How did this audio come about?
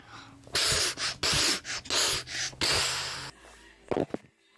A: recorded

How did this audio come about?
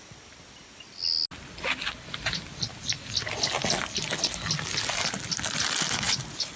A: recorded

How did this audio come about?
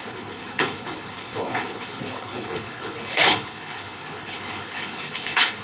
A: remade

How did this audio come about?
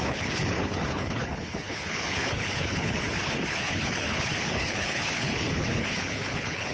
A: remade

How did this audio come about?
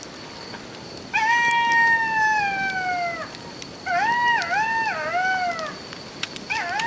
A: recorded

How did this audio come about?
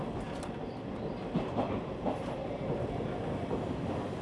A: recorded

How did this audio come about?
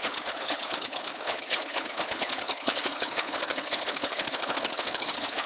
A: remade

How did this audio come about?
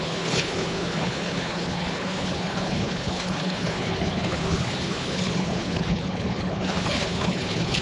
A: remade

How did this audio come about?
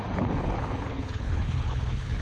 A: remade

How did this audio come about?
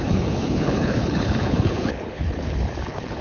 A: remade